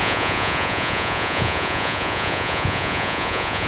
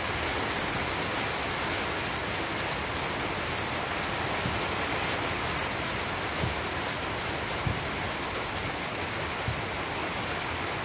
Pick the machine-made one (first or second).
first